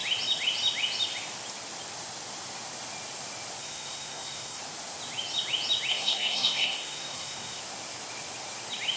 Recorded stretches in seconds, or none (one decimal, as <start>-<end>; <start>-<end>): 0.0-3.6; 4.6-5.9; 7.6-9.0